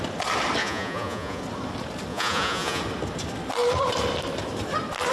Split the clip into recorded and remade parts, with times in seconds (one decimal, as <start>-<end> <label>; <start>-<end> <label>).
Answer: 0.0-0.6 recorded; 0.6-1.4 remade; 1.4-2.1 recorded; 2.1-2.8 remade; 2.8-5.1 recorded